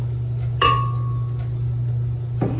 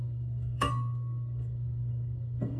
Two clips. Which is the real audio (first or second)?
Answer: first